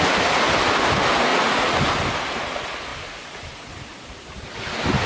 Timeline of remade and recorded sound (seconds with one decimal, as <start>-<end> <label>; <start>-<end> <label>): 0.0-1.3 recorded; 1.3-1.8 remade; 1.8-5.1 recorded